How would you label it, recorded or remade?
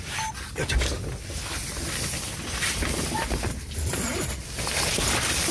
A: recorded